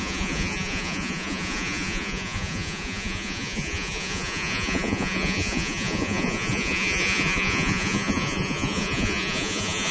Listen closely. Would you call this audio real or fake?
fake